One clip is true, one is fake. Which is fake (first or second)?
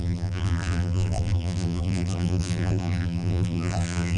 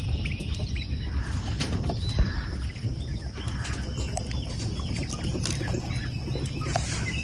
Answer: first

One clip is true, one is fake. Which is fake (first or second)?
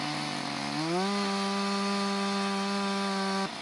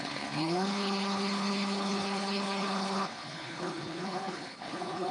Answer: second